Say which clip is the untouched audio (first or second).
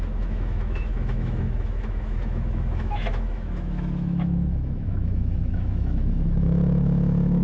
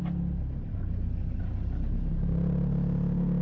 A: second